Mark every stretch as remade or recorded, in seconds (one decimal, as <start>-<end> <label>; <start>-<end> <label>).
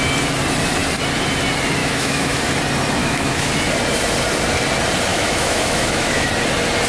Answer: 0.0-1.8 recorded; 1.8-2.4 remade; 2.4-3.0 recorded; 3.0-3.5 remade; 3.5-5.1 recorded; 5.1-6.3 remade; 6.3-6.9 recorded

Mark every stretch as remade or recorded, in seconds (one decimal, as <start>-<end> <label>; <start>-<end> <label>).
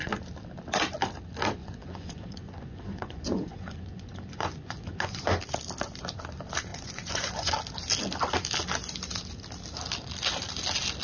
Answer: 0.0-1.6 recorded; 1.6-5.4 remade; 5.4-6.7 recorded; 6.7-7.5 remade; 7.5-11.0 recorded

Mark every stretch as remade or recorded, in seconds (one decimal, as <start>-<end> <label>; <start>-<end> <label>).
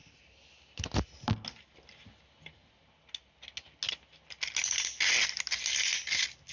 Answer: 0.0-6.5 recorded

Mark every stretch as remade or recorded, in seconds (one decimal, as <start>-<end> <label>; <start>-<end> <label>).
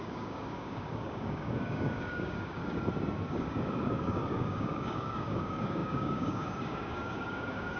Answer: 0.0-2.6 remade; 2.6-3.3 recorded; 3.3-7.8 remade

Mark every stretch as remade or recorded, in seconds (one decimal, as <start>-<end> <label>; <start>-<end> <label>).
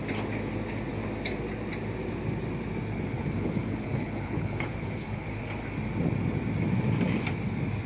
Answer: 0.0-3.2 recorded; 3.2-5.4 remade; 5.4-7.9 recorded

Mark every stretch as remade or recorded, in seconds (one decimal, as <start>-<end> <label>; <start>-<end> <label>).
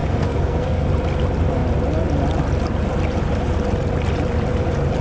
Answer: 0.0-0.9 remade; 0.9-5.0 recorded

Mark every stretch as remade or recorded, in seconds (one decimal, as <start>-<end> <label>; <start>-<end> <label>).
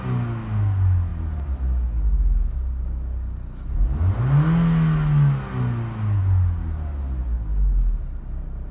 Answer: 0.0-8.7 recorded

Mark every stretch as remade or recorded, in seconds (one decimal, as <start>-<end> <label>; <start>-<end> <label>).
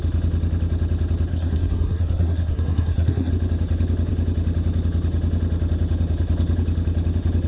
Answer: 0.0-1.3 recorded; 1.3-3.3 remade; 3.3-7.5 recorded